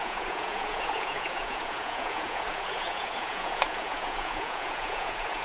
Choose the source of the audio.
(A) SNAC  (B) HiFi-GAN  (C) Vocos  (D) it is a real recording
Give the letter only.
C